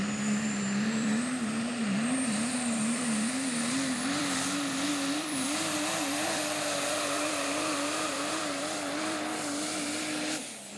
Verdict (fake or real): fake